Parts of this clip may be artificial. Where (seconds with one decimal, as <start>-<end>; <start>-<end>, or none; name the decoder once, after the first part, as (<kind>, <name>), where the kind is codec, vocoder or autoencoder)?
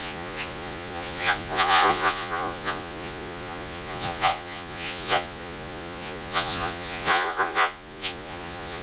0.0-8.8 (vocoder, Vocos)